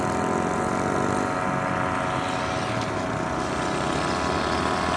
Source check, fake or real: real